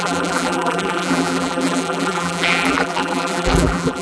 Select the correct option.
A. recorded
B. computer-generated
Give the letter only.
B